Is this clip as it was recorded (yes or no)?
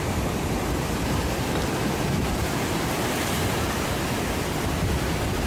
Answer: yes